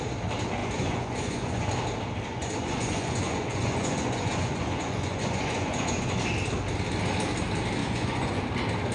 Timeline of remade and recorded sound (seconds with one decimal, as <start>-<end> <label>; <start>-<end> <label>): 0.0-0.6 recorded; 0.6-1.7 remade; 1.7-2.3 recorded; 2.3-6.2 remade; 6.2-7.8 recorded; 7.8-8.4 remade; 8.4-8.9 recorded